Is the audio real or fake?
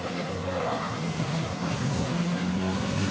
fake